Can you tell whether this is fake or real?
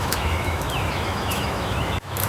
fake